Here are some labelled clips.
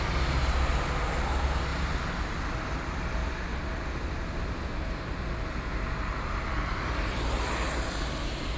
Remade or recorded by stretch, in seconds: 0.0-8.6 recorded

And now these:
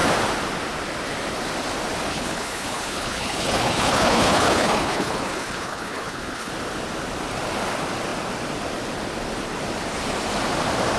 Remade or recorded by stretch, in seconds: 0.0-2.1 recorded; 2.1-6.5 remade; 6.5-11.0 recorded

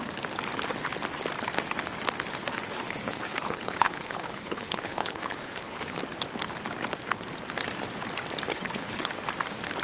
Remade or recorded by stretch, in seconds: 0.0-2.7 recorded; 2.7-6.0 remade; 6.0-8.5 recorded; 8.5-9.1 remade; 9.1-9.8 recorded

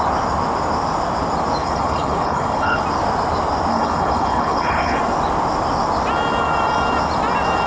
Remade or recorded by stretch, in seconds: 0.0-1.6 recorded; 1.6-2.8 remade; 2.8-3.7 recorded; 3.7-5.0 remade; 5.0-7.7 recorded